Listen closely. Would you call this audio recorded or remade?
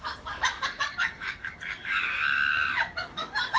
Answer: remade